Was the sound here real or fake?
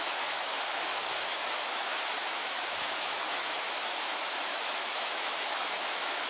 fake